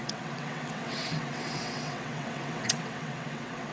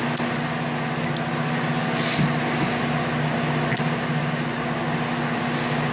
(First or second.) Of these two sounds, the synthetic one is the first